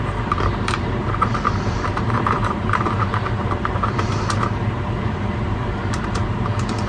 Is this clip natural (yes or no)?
no